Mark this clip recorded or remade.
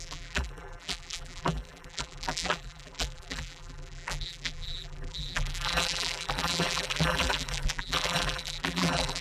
remade